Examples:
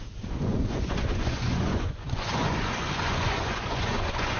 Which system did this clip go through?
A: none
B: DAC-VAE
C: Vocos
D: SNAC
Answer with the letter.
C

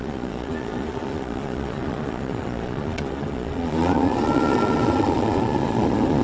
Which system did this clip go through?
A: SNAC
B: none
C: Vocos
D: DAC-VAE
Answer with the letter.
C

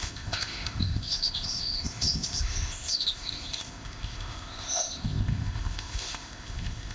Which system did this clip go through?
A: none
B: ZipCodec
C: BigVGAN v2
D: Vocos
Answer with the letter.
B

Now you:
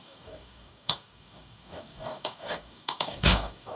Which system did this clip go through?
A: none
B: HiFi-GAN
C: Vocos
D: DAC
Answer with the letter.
D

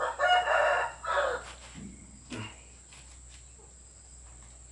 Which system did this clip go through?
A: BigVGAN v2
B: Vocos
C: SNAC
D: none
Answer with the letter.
D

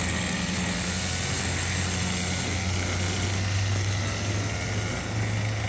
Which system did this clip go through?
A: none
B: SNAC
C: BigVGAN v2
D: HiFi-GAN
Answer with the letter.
A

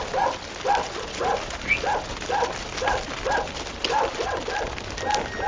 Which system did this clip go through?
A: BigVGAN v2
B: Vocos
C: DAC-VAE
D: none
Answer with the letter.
D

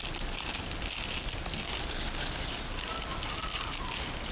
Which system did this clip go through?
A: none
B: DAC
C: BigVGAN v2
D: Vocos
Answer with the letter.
A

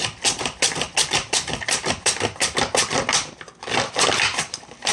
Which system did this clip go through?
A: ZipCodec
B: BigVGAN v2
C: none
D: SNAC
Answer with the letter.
B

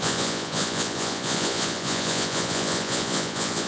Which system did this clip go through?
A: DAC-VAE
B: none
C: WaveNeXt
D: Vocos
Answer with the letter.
D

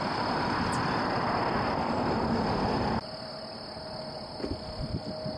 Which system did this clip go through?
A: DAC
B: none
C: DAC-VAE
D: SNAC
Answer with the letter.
B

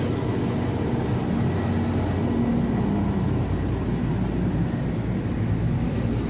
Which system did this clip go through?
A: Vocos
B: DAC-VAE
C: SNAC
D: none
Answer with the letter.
D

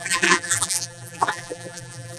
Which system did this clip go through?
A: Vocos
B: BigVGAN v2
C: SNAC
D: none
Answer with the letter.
B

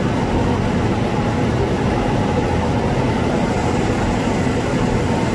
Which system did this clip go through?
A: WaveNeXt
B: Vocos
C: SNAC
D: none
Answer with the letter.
D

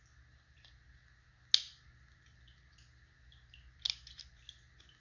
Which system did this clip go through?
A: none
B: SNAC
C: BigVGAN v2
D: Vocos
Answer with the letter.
A